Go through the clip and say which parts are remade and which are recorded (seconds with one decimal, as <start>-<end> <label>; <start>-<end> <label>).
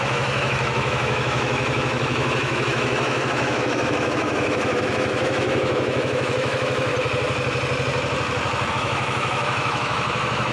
0.0-6.9 remade; 6.9-8.7 recorded; 8.7-10.5 remade